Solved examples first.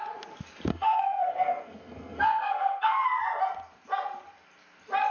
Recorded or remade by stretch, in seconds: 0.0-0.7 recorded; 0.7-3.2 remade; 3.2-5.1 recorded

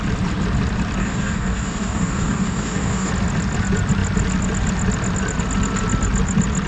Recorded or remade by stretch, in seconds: 0.0-1.0 recorded; 1.0-3.1 remade; 3.1-6.7 recorded

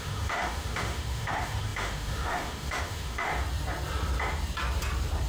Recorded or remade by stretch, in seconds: 0.0-3.3 remade; 3.3-5.3 recorded

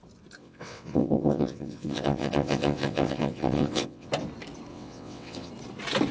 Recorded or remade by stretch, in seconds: 0.0-0.4 recorded; 0.4-4.1 remade; 4.1-4.7 recorded; 4.7-5.5 remade; 5.5-6.1 recorded

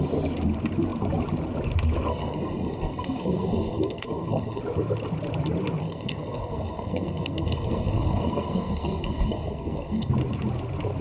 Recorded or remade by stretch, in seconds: 0.0-2.1 recorded; 2.1-4.6 remade; 4.6-5.8 recorded; 5.8-10.1 remade; 10.1-11.0 recorded